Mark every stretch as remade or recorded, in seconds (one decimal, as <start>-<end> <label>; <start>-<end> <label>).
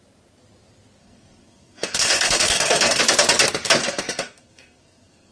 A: 0.0-1.0 recorded; 1.0-3.0 remade; 3.0-3.8 recorded; 3.8-5.3 remade